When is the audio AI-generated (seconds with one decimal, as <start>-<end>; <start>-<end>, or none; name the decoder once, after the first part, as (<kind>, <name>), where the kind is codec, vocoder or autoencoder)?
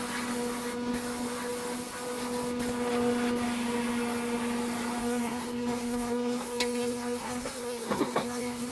5.0-8.7 (codec, SNAC)